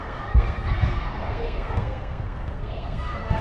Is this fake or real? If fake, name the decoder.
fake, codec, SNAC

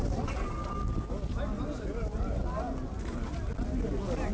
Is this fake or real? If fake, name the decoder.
real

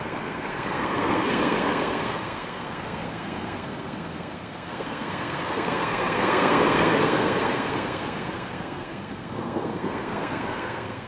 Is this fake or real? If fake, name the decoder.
fake, codec, SNAC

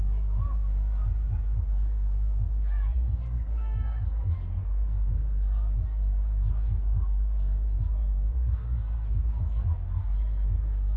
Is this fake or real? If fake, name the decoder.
fake, codec, SNAC